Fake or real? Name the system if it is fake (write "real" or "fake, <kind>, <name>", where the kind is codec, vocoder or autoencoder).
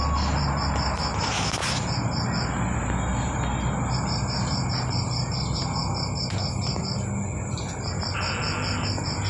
real